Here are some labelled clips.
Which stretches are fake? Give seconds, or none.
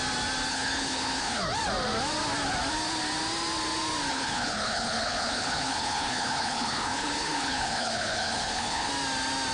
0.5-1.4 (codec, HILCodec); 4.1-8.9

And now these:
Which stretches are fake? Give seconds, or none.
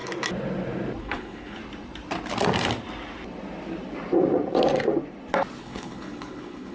1.0-1.6 (codec, HILCodec); 5.6-6.7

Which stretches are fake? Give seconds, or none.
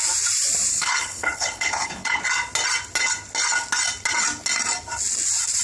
0.7-2.2 (codec, HILCodec)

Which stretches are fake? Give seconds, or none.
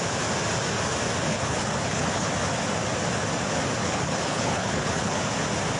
1.3-2.3 (codec, HILCodec); 3.8-5.2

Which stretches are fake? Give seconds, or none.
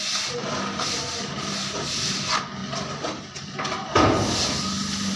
none